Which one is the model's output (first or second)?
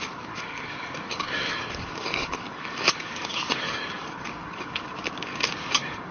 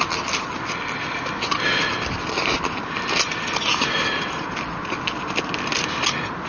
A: first